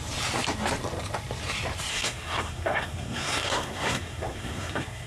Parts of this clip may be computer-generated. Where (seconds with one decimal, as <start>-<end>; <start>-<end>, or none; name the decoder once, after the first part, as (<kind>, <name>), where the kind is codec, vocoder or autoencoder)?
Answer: 1.9-5.1 (codec, SNAC)